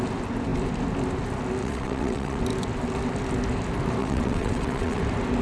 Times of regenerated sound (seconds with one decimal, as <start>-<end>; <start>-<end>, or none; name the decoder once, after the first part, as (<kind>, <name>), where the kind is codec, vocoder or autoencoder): 1.6-2.4 (vocoder, WaveNeXt); 4.0-5.0